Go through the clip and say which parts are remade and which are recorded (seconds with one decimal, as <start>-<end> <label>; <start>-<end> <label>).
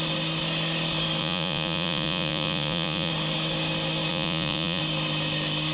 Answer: 0.0-1.2 recorded; 1.2-3.1 remade; 3.1-4.1 recorded; 4.1-4.8 remade; 4.8-5.7 recorded